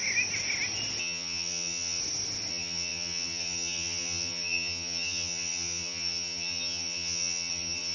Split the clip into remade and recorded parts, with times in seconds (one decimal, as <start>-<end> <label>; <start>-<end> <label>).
0.0-1.0 recorded; 1.0-2.0 remade; 2.0-2.5 recorded; 2.5-7.9 remade